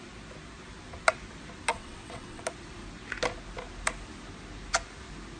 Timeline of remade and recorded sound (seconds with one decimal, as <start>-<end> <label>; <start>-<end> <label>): 0.0-1.7 recorded; 1.7-2.4 remade; 2.4-5.4 recorded